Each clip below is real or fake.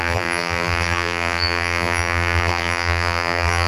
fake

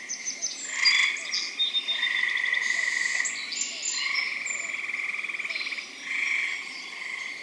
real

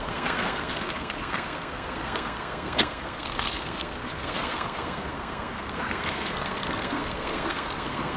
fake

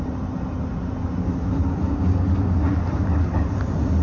real